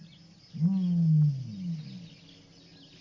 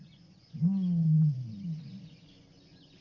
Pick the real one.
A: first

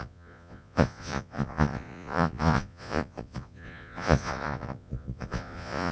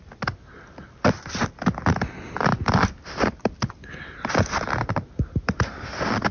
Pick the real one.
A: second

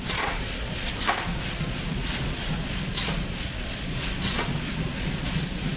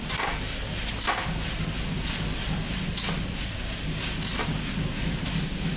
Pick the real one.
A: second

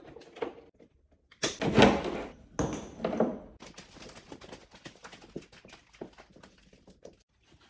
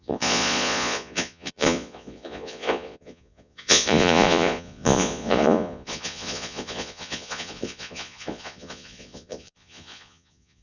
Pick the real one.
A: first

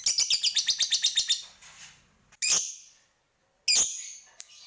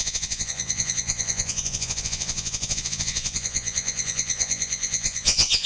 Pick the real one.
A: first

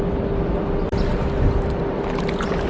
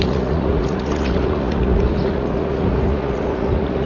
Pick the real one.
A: first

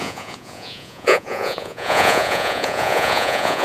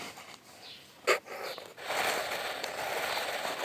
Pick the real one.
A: second